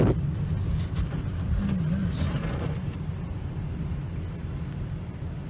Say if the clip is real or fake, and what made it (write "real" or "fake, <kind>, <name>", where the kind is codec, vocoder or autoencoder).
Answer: real